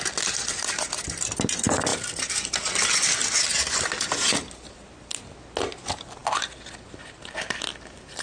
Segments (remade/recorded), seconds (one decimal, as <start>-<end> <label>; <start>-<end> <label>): 0.0-8.2 recorded